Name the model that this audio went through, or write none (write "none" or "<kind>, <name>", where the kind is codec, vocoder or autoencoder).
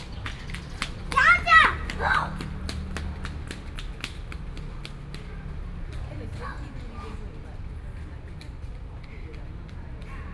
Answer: none